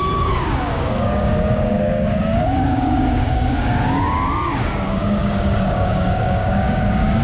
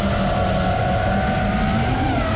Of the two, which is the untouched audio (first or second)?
second